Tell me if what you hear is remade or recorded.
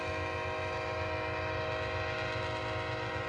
recorded